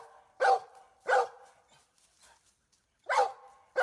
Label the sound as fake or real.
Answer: real